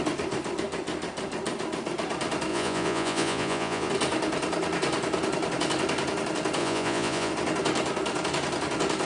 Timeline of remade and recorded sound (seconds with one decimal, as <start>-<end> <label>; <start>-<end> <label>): 0.0-2.5 recorded; 2.5-3.9 remade; 3.9-6.6 recorded; 6.6-7.3 remade; 7.3-9.1 recorded